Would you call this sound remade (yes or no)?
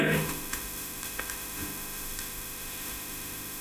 yes